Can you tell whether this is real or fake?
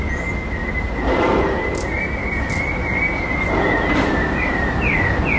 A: real